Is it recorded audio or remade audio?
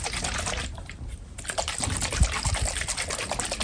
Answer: recorded